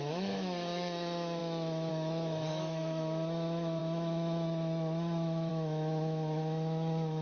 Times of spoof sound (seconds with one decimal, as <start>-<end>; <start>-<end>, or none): 0.0-7.2